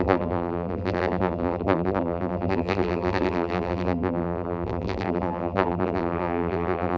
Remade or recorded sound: remade